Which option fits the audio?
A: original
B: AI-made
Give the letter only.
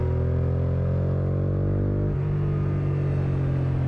A